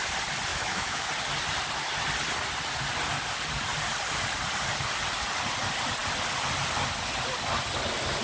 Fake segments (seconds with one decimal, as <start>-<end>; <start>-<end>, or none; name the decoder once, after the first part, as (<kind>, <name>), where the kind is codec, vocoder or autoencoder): 0.5-1.1 (autoencoder, DAC-VAE)